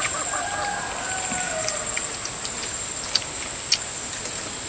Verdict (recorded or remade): recorded